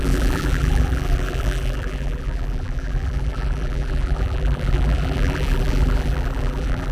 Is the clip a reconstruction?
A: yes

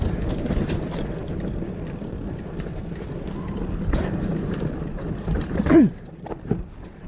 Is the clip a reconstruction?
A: yes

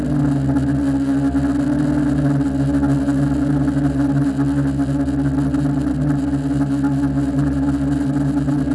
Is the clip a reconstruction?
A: no